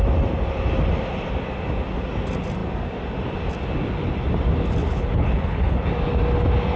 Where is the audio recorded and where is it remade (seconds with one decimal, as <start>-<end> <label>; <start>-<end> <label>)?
0.0-4.8 recorded; 4.8-5.9 remade; 5.9-6.8 recorded